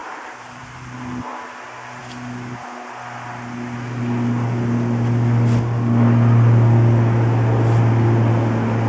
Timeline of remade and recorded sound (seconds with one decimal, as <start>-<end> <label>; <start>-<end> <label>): 0.0-0.6 remade; 0.6-8.9 recorded